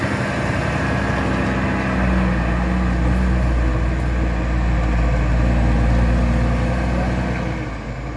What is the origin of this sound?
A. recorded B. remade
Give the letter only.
A